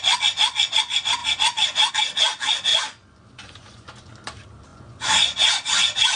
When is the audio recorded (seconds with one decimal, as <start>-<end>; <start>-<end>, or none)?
0.0-2.7; 4.1-4.7; 5.5-6.2